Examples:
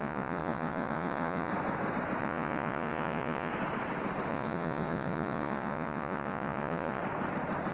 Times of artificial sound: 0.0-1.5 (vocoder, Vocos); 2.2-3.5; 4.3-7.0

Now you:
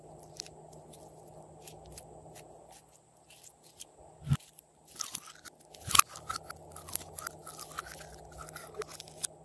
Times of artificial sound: none